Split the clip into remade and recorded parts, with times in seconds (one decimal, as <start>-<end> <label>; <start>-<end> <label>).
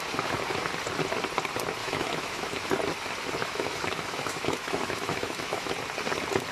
0.0-1.8 recorded; 1.8-2.7 remade; 2.7-3.4 recorded; 3.4-5.7 remade; 5.7-6.5 recorded